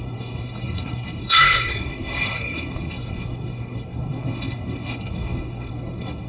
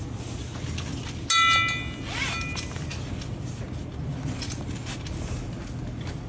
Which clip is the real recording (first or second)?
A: second